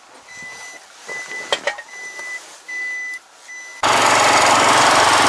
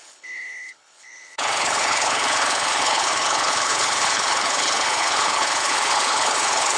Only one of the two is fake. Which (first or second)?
second